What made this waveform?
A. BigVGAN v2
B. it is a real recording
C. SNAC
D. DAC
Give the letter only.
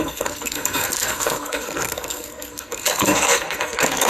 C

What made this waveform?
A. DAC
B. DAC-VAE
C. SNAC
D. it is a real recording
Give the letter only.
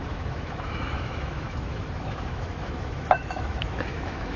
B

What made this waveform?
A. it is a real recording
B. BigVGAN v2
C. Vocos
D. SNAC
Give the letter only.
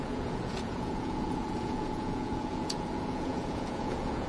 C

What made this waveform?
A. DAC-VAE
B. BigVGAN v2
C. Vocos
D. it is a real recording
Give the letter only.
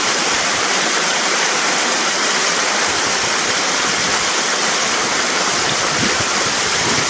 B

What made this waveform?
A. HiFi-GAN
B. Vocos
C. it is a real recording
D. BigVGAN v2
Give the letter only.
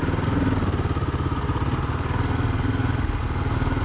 C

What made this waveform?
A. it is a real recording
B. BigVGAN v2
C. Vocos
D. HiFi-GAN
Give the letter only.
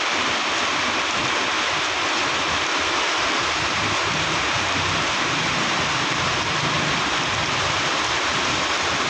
B